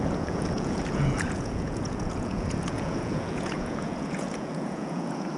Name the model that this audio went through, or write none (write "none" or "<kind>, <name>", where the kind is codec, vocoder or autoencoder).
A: vocoder, Vocos